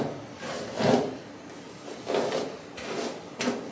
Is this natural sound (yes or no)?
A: yes